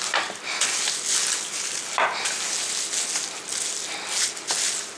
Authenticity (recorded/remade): recorded